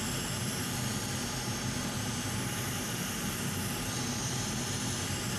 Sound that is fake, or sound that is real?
real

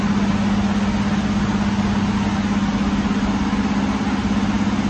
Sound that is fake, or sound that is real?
real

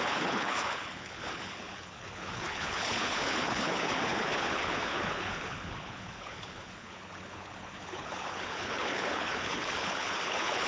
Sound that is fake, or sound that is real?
fake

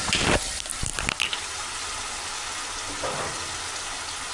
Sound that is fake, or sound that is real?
real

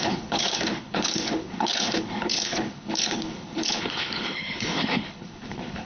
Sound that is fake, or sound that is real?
fake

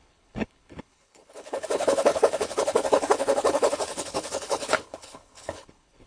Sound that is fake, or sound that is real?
fake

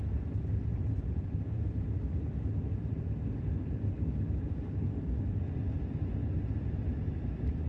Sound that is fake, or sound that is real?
real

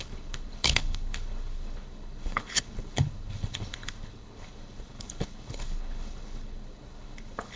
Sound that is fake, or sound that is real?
fake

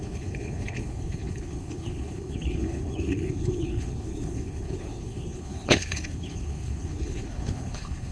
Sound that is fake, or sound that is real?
fake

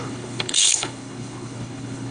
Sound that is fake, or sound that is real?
fake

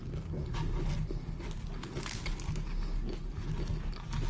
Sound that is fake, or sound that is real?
real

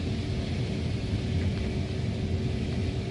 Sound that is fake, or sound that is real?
real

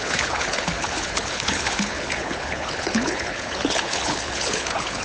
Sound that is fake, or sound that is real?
fake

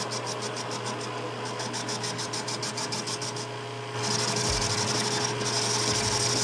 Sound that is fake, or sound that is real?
real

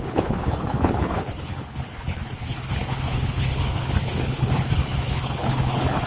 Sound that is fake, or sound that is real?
fake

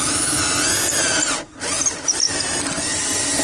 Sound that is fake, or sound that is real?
real